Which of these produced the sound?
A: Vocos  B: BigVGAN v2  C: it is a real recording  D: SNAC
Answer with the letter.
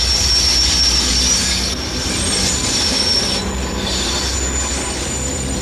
C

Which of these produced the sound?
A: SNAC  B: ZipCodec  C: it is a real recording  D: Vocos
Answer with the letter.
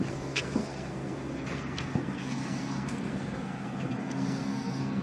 A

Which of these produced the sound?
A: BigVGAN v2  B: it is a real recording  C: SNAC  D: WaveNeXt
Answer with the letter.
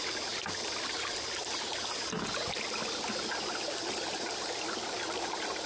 B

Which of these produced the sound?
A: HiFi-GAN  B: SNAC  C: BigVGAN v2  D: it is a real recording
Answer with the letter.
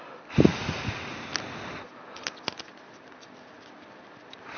D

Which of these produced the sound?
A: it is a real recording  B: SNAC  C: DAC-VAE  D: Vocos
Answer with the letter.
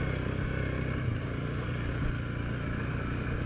A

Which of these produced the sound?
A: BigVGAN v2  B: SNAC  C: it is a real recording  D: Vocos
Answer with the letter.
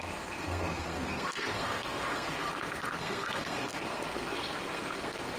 B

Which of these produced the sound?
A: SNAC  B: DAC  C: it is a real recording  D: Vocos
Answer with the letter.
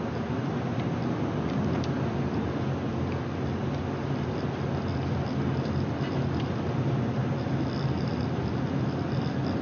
C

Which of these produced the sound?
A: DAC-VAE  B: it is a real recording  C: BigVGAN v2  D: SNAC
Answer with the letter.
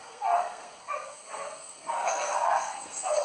D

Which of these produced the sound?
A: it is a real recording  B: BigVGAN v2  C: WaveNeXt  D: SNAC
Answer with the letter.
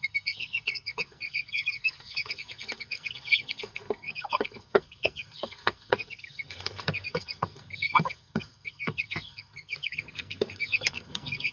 D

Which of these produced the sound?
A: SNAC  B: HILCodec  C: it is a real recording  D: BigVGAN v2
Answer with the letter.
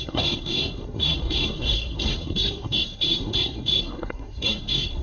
A